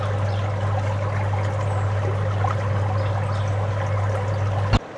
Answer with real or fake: real